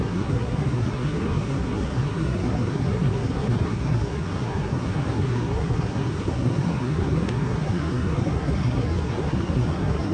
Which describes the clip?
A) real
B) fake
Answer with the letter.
B